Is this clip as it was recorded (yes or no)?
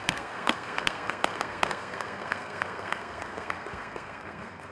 no